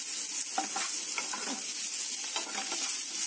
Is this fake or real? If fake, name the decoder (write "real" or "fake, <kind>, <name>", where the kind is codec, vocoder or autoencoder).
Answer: real